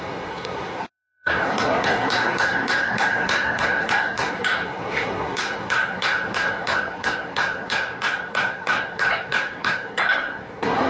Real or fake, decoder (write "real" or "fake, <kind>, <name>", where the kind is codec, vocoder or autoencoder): fake, codec, SNAC